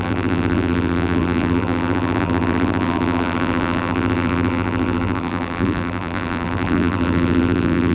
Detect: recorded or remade remade